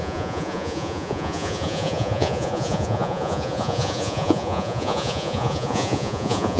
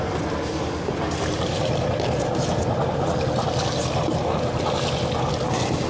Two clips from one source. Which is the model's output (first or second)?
first